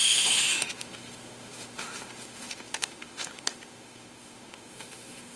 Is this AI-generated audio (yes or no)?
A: yes